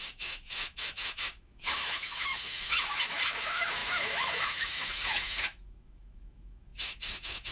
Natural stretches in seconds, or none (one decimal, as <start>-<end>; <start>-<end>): none